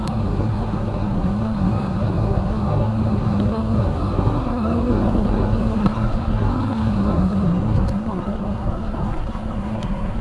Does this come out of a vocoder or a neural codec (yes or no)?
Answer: yes